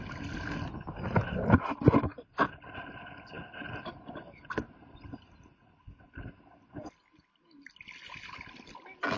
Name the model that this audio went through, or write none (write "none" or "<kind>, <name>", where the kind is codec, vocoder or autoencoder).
none